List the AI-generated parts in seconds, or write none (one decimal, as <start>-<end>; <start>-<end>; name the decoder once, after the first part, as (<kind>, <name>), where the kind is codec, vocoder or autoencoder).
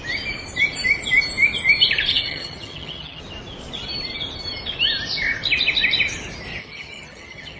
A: 2.1-3.2 (vocoder, HiFi-GAN); 6.6-7.6